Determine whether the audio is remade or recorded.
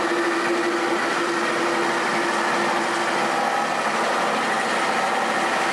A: recorded